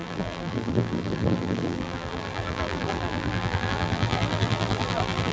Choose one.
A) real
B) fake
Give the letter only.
B